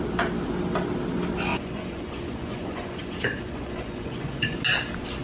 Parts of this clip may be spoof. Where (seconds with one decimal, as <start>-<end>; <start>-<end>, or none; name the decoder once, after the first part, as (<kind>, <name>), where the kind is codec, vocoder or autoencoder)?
1.5-4.6 (vocoder, Vocos)